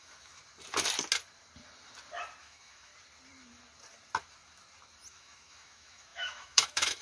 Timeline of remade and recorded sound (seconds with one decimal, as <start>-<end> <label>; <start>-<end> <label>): 0.0-0.4 remade; 0.4-2.4 recorded; 2.4-2.9 remade; 2.9-5.1 recorded; 5.1-7.0 remade